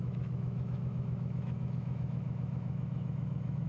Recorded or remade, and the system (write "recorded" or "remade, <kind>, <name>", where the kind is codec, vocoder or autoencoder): remade, autoencoder, DAC-VAE